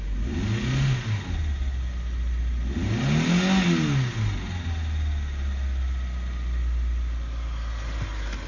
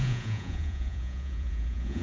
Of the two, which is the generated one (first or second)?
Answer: second